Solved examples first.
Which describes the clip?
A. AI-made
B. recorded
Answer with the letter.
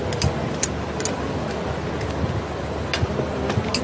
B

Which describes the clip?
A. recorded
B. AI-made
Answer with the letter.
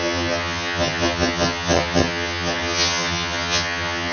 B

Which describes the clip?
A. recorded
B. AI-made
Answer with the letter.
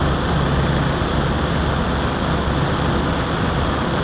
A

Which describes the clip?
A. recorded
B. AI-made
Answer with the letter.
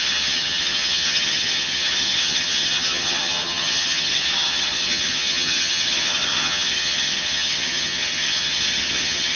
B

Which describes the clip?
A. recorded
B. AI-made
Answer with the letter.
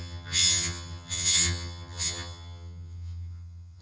B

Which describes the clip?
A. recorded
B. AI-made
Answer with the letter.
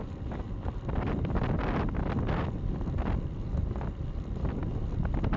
A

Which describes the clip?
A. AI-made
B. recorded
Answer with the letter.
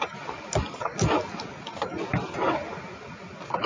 B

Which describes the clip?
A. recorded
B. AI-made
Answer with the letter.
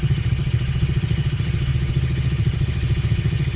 B